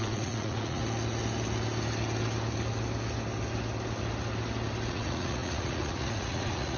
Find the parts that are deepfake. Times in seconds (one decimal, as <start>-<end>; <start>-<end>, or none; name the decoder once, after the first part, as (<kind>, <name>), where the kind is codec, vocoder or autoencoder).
0.0-0.8 (vocoder, Vocos); 4.9-6.8